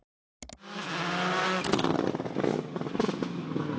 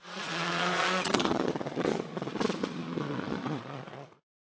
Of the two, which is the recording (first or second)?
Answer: first